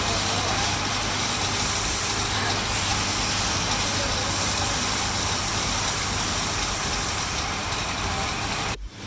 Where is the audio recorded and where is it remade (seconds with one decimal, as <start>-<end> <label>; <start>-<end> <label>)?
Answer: 0.0-9.1 recorded